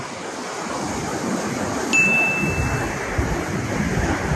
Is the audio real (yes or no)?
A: yes